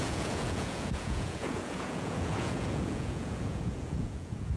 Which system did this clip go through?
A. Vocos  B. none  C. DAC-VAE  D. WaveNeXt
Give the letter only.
A